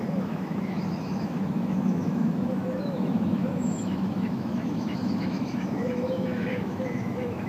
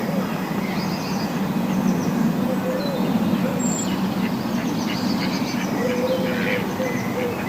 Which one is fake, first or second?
first